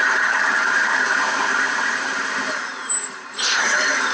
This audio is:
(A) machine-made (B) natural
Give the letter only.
A